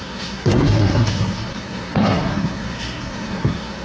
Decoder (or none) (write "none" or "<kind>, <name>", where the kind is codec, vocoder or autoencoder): codec, SNAC